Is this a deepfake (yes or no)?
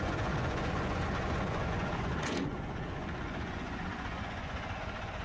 yes